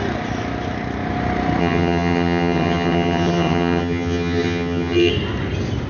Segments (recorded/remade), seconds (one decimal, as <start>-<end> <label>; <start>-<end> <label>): 0.0-1.6 recorded; 1.6-5.1 remade; 5.1-5.9 recorded